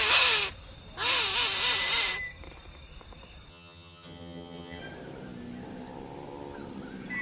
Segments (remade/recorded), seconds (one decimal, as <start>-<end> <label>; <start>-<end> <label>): 0.0-3.5 recorded; 3.5-4.8 remade; 4.8-7.2 recorded